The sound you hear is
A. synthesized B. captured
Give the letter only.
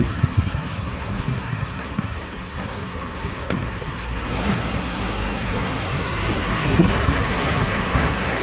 A